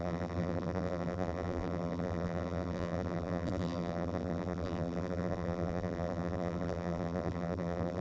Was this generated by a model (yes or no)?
yes